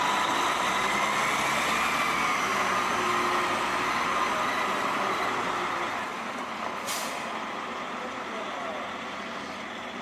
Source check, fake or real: real